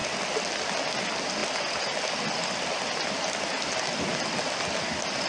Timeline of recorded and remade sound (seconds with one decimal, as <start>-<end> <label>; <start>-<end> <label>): 0.0-5.3 recorded